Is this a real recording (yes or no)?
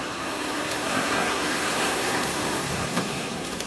no